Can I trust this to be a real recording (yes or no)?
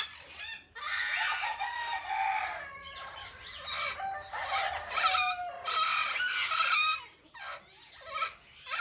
yes